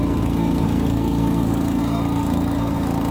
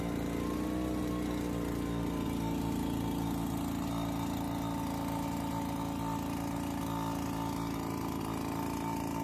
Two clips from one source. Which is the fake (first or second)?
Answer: first